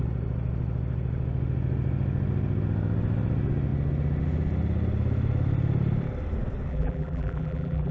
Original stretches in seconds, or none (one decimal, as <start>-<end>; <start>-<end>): 0.0-6.7